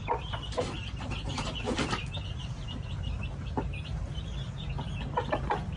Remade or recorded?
remade